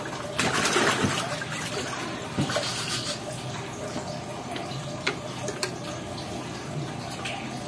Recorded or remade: recorded